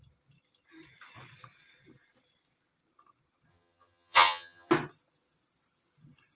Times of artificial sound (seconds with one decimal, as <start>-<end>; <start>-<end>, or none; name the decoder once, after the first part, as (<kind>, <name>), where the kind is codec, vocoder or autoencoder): 3.5-4.7 (vocoder, HiFi-GAN)